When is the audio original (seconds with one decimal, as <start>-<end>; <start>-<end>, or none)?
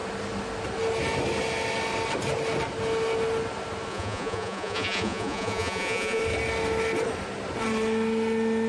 0.0-3.9; 6.2-8.7